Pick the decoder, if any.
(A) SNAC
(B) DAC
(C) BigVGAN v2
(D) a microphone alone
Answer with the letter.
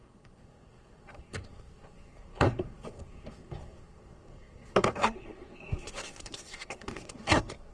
A